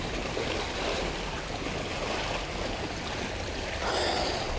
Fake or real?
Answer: real